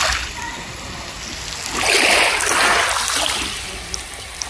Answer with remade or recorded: recorded